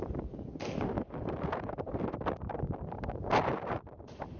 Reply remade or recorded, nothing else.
remade